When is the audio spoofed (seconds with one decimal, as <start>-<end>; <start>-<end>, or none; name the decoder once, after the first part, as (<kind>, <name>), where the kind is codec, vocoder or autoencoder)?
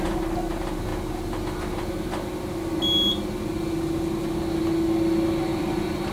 5.5-6.1 (vocoder, BigVGAN v2)